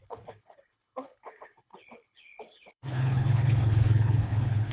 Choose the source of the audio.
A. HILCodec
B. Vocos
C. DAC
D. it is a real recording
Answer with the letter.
A